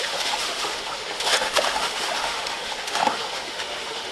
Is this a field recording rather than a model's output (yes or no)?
no